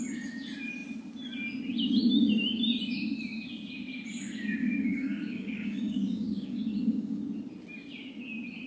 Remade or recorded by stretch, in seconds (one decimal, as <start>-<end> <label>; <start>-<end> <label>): 0.0-4.6 recorded; 4.6-7.2 remade; 7.2-8.7 recorded